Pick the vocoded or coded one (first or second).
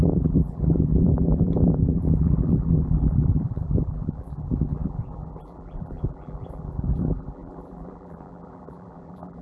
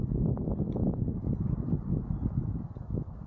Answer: first